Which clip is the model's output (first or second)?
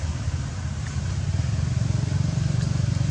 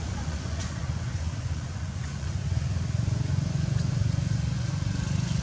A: second